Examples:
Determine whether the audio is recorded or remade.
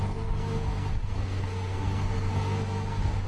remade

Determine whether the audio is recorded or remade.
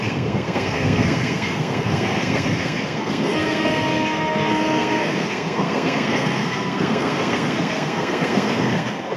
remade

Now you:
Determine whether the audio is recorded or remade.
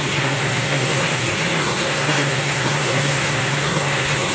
remade